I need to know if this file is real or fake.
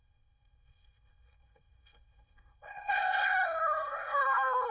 fake